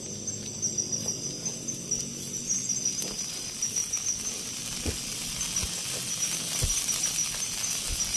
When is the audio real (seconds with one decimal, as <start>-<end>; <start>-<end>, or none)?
0.0-8.2

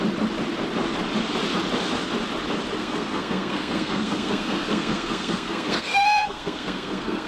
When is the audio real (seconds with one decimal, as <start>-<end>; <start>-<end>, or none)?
0.0-2.8

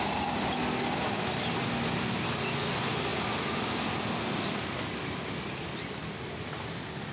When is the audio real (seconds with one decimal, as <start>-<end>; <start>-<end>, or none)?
0.0-7.1

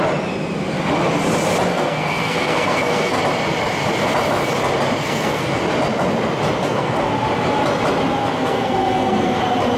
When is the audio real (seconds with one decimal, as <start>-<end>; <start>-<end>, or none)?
0.0-1.7; 3.2-5.0; 5.6-6.6; 7.1-8.2; 9.4-9.8

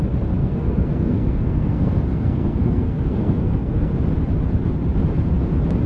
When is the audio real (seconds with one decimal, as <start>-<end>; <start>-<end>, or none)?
0.0-0.4; 3.9-5.9

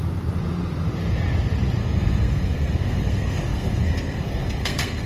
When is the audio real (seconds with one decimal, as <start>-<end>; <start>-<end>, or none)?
0.0-1.8